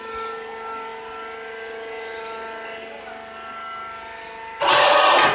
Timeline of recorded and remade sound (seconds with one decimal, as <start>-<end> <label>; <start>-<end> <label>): 0.0-5.3 recorded

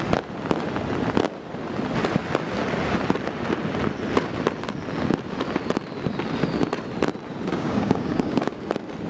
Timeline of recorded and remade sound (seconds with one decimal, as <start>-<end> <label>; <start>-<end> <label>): 0.0-7.5 recorded; 7.5-8.6 remade; 8.6-9.1 recorded

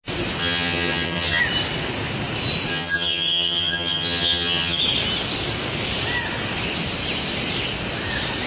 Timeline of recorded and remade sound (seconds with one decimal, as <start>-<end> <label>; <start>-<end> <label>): 0.0-0.4 recorded; 0.4-1.4 remade; 1.4-2.7 recorded; 2.7-4.8 remade; 4.8-8.5 recorded

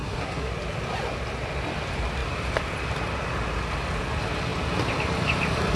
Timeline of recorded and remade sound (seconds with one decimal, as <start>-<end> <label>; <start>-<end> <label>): 0.0-0.5 remade; 0.5-5.8 recorded

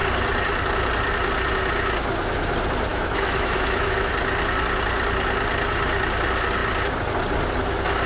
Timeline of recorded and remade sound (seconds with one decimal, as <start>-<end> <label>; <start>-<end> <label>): 0.0-2.9 recorded; 2.9-4.1 remade; 4.1-8.1 recorded

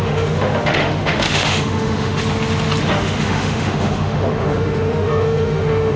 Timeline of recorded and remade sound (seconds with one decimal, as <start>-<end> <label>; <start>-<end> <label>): 0.0-2.2 remade; 2.2-2.8 recorded; 2.8-6.0 remade